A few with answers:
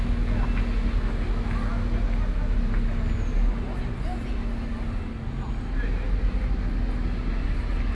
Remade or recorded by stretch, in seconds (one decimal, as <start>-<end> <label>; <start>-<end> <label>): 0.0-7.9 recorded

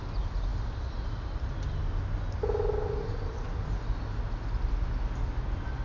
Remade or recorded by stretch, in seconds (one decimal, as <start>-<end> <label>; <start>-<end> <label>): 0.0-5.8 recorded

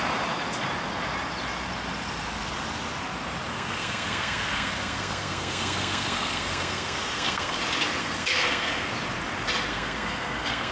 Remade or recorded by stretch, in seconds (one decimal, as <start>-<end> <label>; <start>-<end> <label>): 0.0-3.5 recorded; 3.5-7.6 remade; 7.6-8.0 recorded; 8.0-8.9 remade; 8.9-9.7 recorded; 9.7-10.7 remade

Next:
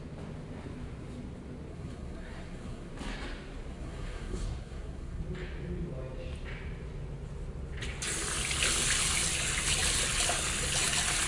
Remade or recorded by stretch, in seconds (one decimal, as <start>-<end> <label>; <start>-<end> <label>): 0.0-1.7 recorded; 1.7-2.9 remade; 2.9-3.7 recorded; 3.7-5.2 remade; 5.2-11.3 recorded

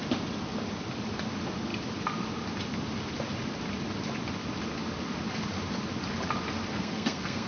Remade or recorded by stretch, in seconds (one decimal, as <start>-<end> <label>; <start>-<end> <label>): 0.0-6.7 recorded; 6.7-7.5 remade

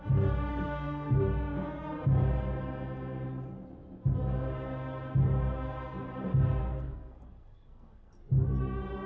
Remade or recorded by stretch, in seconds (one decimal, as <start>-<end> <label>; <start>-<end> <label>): 0.0-0.5 recorded; 0.5-1.2 remade; 1.2-6.6 recorded; 6.6-8.2 remade; 8.2-9.1 recorded

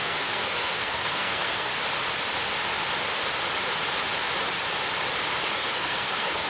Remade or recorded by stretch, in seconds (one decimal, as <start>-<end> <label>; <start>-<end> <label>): 0.0-1.7 remade; 1.7-5.5 recorded; 5.5-6.5 remade